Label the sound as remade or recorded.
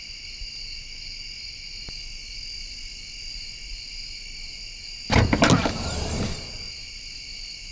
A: recorded